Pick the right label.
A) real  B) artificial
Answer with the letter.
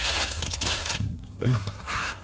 B